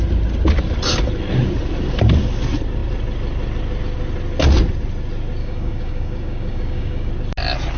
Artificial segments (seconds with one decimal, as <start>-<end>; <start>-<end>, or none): 5.4-7.1